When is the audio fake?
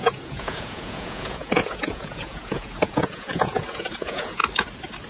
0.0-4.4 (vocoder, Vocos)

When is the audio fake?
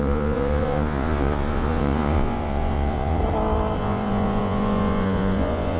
0.0-3.2 (vocoder, Vocos); 3.8-5.8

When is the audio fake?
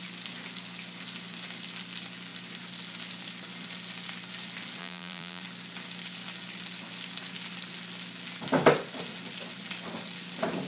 4.8-5.4 (vocoder, BigVGAN v2)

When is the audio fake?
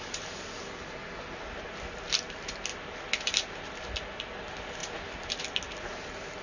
none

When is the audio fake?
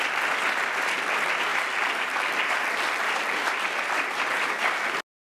1.5-4.6 (vocoder, BigVGAN v2)